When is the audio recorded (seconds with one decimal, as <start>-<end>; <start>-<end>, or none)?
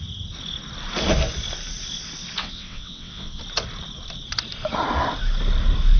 0.0-2.4; 3.4-6.0